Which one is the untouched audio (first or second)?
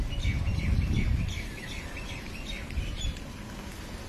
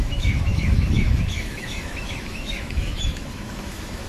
first